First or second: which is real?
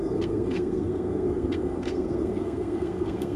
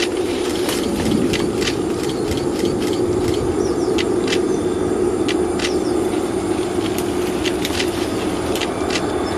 second